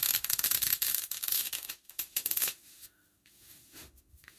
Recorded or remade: remade